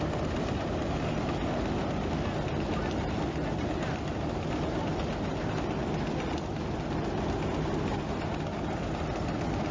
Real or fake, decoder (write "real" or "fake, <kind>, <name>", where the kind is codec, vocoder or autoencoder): real